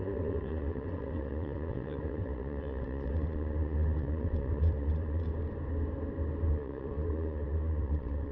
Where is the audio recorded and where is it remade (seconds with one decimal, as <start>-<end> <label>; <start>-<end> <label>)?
0.0-5.3 remade; 5.3-6.5 recorded; 6.5-8.3 remade